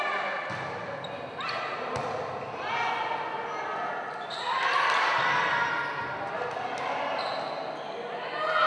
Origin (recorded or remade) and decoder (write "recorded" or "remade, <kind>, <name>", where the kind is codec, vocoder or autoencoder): recorded